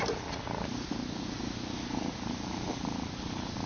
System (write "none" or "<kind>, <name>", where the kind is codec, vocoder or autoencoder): none